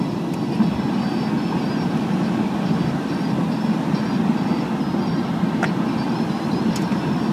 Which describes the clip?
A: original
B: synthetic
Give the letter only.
A